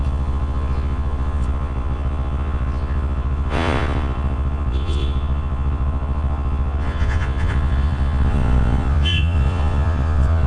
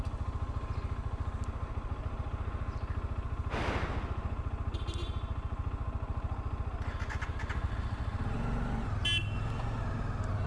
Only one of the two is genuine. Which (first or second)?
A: second